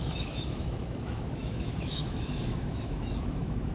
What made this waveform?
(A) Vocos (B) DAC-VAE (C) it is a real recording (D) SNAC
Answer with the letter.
B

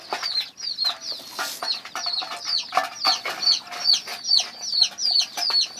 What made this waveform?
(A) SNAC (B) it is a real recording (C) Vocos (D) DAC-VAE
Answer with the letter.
B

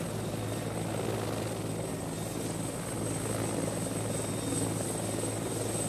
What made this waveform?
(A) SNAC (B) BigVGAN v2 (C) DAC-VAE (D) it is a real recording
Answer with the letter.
D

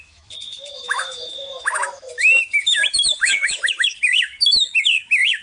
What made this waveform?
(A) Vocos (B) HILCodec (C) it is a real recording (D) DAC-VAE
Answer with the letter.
D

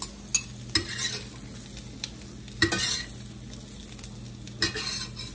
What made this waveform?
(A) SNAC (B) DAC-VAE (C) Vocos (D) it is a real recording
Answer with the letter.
D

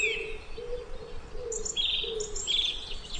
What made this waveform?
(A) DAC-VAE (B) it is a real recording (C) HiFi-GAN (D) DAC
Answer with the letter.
B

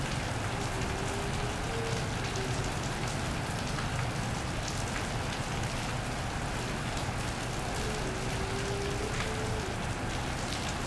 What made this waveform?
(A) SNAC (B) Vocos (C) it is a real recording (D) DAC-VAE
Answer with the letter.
C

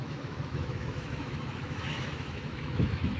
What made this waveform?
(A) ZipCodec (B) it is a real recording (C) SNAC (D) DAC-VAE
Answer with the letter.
D